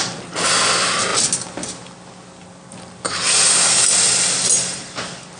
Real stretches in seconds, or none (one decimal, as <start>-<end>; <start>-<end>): 0.0-5.4